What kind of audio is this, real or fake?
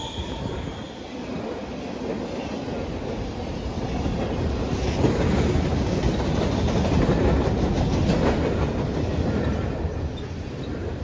real